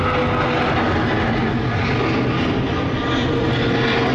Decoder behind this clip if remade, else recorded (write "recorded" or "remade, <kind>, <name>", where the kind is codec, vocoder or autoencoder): recorded